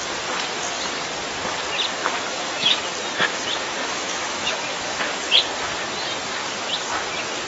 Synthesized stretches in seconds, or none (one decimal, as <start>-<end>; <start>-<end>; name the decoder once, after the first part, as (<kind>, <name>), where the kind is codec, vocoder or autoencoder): 2.0-2.8 (autoencoder, DAC-VAE); 3.8-5.0